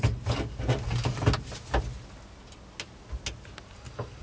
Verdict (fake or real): real